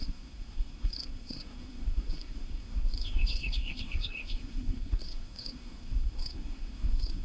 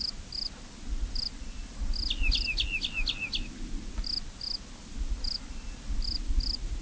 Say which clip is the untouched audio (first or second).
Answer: second